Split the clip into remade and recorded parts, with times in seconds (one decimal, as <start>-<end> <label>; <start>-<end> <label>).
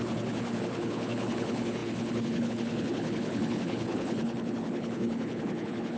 0.0-6.0 remade